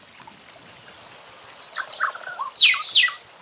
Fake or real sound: real